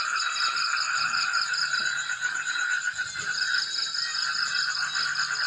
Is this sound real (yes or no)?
yes